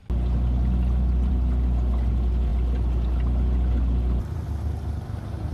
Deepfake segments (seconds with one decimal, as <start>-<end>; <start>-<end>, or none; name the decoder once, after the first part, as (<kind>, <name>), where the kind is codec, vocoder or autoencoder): none